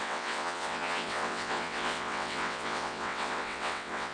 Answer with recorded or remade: remade